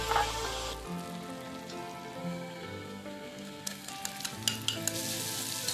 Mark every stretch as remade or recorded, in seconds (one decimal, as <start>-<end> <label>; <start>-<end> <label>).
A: 0.0-2.2 recorded; 2.2-3.9 remade; 3.9-5.7 recorded